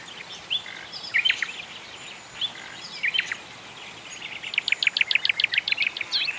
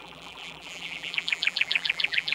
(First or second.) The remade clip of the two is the second